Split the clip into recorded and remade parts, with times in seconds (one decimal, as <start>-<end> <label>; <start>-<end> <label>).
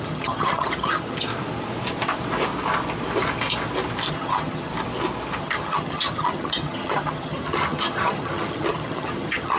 0.0-1.3 remade; 1.3-4.1 recorded; 4.1-4.7 remade; 4.7-5.4 recorded; 5.4-9.6 remade